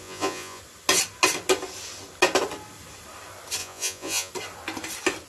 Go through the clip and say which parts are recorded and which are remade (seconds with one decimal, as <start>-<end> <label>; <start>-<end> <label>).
0.0-0.6 remade; 0.6-3.6 recorded; 3.6-4.3 remade; 4.3-5.3 recorded

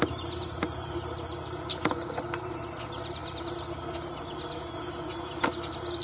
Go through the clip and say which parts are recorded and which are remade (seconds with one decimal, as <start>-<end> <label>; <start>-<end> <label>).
0.0-6.0 recorded

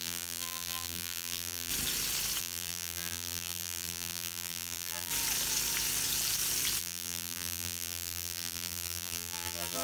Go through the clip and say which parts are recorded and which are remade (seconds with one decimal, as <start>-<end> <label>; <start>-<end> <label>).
0.0-1.7 remade; 1.7-2.4 recorded; 2.4-5.1 remade; 5.1-6.8 recorded; 6.8-9.8 remade

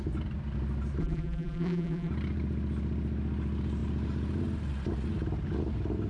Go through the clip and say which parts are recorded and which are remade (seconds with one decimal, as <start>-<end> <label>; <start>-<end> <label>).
0.0-1.0 recorded; 1.0-2.1 remade; 2.1-6.1 recorded

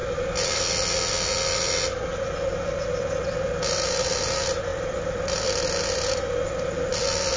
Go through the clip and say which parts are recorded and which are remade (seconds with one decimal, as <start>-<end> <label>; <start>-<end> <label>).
0.0-0.6 remade; 0.6-4.7 recorded; 4.7-5.6 remade; 5.6-7.4 recorded

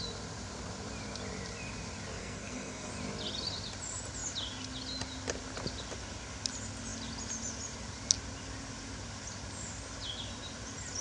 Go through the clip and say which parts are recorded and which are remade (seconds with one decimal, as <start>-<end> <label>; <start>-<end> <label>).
0.0-2.2 recorded; 2.2-2.9 remade; 2.9-11.0 recorded